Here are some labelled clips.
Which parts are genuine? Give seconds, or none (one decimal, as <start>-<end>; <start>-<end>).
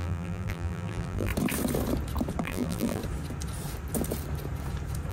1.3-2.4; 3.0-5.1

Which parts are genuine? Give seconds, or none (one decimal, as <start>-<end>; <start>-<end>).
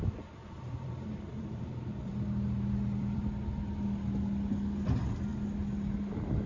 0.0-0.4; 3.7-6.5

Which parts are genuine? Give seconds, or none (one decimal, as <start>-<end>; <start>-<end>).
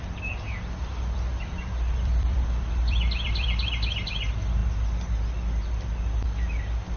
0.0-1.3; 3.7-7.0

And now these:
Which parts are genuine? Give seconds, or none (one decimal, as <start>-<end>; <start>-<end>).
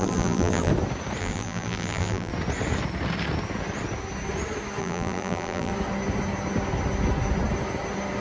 0.7-1.2; 2.3-4.8; 5.7-8.2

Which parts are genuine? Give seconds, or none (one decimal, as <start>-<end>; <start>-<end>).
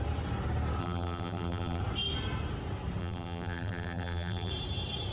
0.0-0.8; 1.8-3.0; 4.5-5.1